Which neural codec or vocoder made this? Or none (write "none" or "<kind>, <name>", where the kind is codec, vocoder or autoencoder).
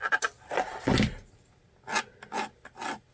none